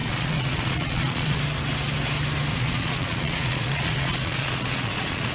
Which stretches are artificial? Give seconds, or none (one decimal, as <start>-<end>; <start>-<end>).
0.0-1.4; 2.5-5.3